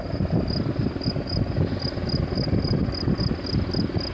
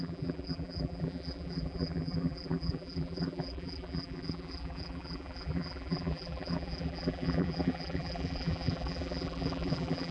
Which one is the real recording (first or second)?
first